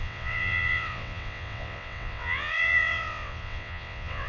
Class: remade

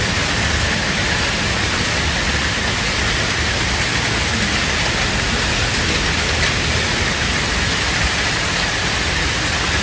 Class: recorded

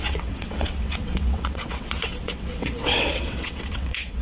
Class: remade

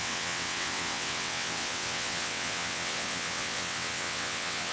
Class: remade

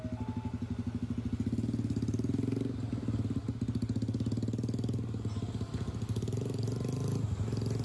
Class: recorded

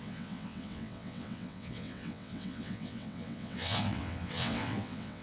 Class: remade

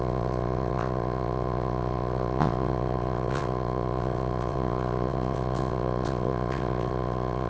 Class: remade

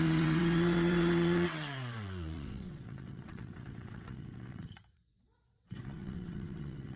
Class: remade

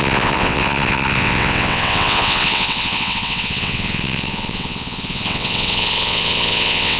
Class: remade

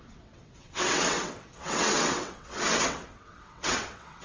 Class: remade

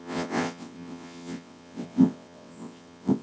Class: remade